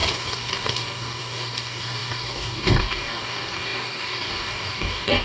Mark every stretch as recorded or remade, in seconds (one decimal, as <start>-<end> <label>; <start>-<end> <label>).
0.0-5.2 remade